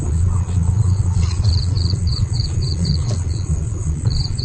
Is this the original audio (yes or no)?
no